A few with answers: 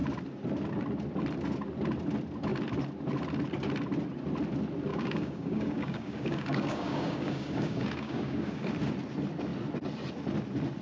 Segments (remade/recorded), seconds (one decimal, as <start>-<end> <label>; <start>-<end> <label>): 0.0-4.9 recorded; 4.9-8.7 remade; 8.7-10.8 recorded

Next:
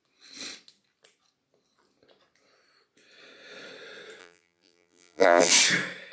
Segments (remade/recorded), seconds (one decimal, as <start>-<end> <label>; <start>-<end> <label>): 0.0-4.2 recorded; 4.2-5.5 remade; 5.5-6.1 recorded

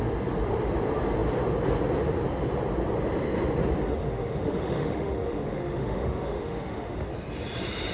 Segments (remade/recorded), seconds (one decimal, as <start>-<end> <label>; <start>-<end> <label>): 0.0-3.8 recorded; 3.8-7.1 remade; 7.1-7.9 recorded

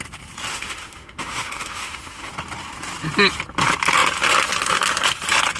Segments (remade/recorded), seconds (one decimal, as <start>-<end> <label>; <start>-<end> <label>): 0.0-0.5 recorded; 0.5-2.3 remade; 2.3-5.6 recorded

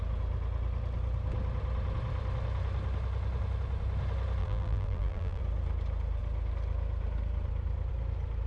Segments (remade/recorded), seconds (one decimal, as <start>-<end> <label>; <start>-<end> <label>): 0.0-4.4 recorded; 4.4-5.4 remade; 5.4-8.5 recorded

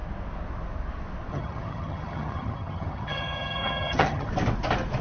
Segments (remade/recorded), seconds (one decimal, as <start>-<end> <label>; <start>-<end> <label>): 0.0-1.3 recorded; 1.3-4.3 remade; 4.3-5.0 recorded